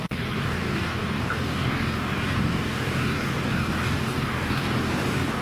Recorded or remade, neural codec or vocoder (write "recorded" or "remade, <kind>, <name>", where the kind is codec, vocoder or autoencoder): remade, codec, DAC